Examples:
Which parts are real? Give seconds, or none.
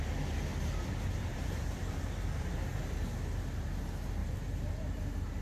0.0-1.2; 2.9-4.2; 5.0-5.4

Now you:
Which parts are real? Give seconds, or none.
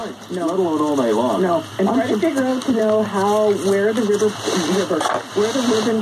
0.0-6.0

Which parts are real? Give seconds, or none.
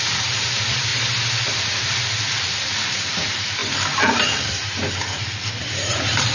0.9-2.0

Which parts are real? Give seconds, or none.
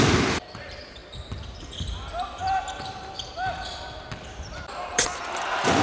1.0-4.5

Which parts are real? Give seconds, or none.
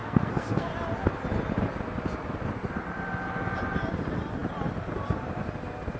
0.7-6.0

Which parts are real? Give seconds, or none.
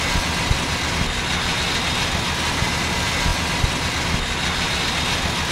0.0-5.5